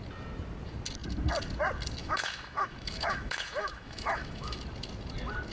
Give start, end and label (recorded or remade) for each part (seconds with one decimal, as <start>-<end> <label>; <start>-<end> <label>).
0.0-2.0 recorded; 2.0-4.6 remade; 4.6-5.5 recorded